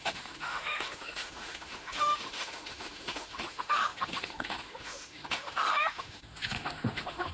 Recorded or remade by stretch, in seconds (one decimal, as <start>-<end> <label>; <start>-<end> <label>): 0.0-7.3 remade

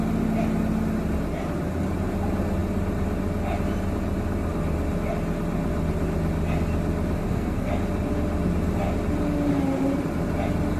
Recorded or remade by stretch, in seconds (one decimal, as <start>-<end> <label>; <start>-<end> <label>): 0.0-7.2 recorded; 7.2-7.7 remade; 7.7-10.8 recorded